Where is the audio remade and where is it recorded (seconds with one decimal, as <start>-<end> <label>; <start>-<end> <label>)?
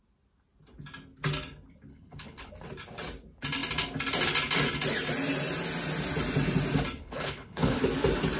0.0-1.9 recorded; 1.9-2.5 remade; 2.5-7.0 recorded; 7.0-7.8 remade; 7.8-8.4 recorded